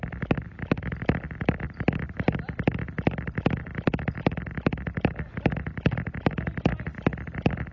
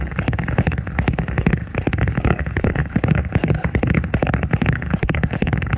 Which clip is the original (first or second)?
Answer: first